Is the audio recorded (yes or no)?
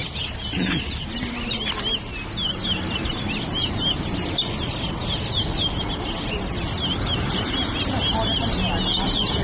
yes